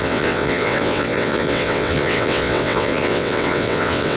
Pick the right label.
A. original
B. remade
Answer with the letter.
B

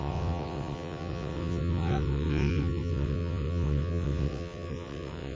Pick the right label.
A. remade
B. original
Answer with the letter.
A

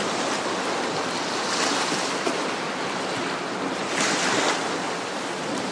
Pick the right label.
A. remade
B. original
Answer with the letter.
B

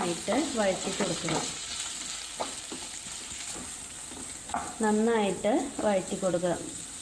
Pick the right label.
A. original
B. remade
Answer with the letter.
A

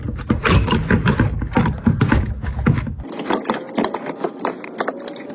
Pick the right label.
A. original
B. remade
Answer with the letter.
A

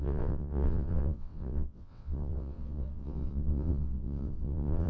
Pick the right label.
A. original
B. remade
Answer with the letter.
B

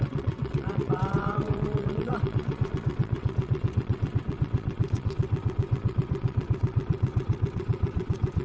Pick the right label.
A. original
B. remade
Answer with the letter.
B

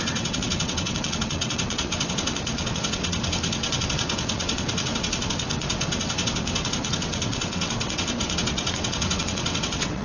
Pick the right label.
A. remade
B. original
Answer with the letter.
A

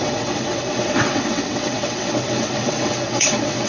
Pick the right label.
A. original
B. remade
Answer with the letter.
B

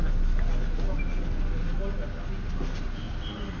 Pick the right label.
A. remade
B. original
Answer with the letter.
B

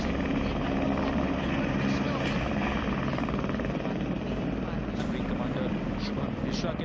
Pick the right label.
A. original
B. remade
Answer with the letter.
A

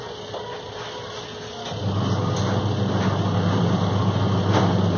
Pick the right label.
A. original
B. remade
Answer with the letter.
A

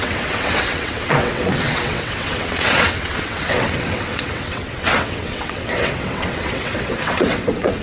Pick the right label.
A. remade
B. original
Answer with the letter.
A